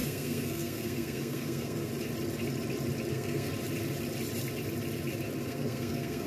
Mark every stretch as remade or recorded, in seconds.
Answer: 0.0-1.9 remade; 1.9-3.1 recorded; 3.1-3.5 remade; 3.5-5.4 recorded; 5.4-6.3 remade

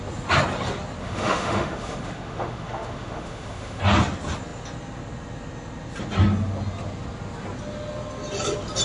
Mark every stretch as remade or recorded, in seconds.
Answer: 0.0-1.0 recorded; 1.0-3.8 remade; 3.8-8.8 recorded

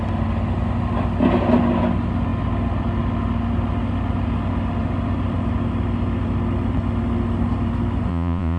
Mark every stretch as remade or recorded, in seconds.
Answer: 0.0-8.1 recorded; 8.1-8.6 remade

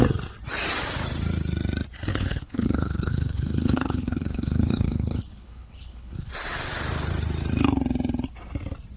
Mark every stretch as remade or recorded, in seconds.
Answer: 0.0-2.1 recorded; 2.1-6.3 remade; 6.3-9.0 recorded

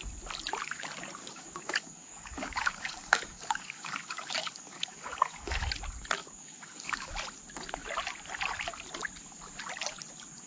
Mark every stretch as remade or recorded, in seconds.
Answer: 0.0-1.2 recorded; 1.2-5.7 remade; 5.7-6.2 recorded; 6.2-7.1 remade; 7.1-10.5 recorded

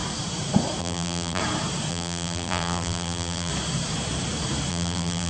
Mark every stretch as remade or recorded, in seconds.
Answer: 0.0-0.8 recorded; 0.8-1.4 remade; 1.4-1.9 recorded; 1.9-3.5 remade; 3.5-4.7 recorded; 4.7-5.3 remade